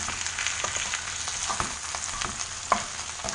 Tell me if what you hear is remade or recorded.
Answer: recorded